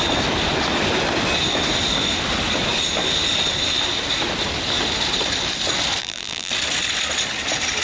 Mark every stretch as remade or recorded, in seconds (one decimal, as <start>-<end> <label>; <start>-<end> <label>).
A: 0.0-6.0 recorded; 6.0-6.5 remade; 6.5-7.8 recorded

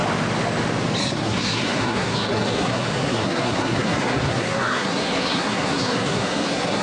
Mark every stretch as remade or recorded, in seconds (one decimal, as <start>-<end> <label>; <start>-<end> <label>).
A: 0.0-1.0 recorded; 1.0-6.8 remade

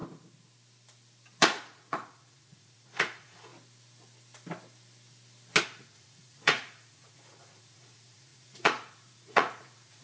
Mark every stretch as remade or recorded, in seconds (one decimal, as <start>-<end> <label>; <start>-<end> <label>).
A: 0.0-1.4 recorded; 1.4-3.5 remade; 3.5-5.6 recorded; 5.6-10.0 remade

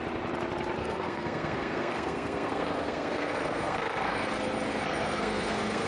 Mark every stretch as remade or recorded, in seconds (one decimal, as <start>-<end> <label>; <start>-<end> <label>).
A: 0.0-0.8 recorded; 0.8-4.3 remade; 4.3-4.7 recorded; 4.7-5.9 remade